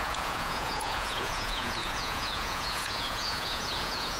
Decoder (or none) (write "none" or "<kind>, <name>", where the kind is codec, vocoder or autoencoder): vocoder, Vocos